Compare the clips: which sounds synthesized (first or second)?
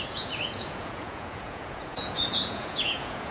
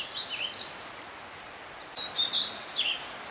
first